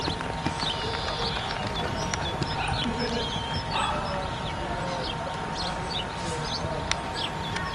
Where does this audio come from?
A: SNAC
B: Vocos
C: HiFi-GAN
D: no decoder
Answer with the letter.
D